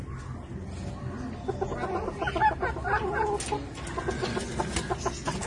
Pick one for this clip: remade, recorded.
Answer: recorded